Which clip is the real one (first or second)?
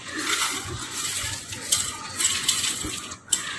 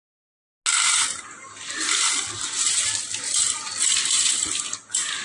second